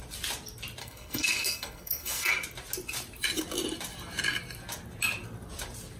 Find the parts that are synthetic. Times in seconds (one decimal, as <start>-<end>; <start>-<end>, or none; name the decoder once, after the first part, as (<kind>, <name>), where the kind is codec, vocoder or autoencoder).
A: 0.8-2.3 (codec, SNAC)